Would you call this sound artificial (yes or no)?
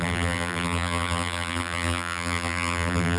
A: yes